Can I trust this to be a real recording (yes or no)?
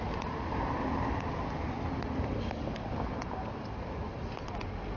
yes